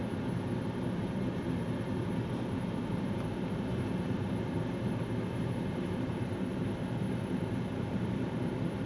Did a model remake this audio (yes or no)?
yes